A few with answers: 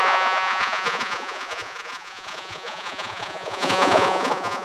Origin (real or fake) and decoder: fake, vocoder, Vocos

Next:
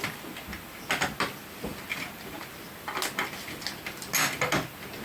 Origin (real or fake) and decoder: real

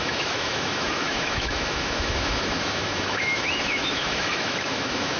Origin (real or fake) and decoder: fake, autoencoder, DAC-VAE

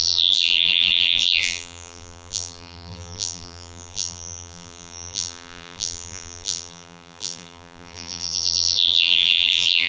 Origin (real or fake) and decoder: fake, vocoder, BigVGAN v2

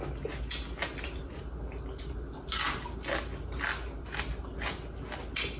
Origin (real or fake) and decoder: real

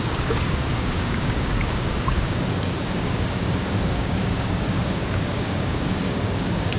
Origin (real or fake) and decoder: fake, codec, DAC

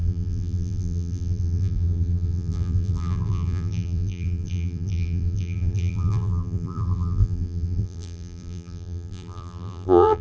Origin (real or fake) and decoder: fake, vocoder, BigVGAN v2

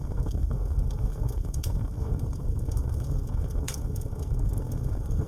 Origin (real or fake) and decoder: fake, codec, SNAC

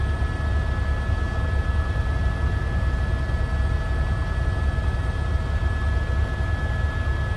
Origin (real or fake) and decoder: real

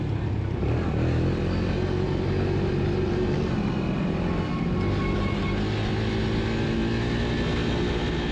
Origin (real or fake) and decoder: real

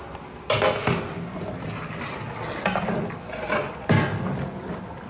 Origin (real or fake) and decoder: real